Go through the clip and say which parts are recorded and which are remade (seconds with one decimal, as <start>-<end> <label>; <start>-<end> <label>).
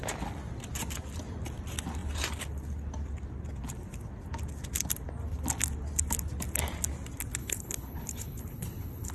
0.0-7.4 recorded; 7.4-9.1 remade